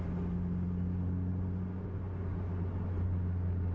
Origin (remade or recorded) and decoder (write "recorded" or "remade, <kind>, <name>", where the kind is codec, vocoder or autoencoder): recorded